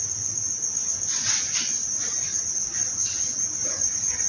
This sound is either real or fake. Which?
real